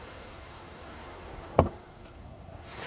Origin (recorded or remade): remade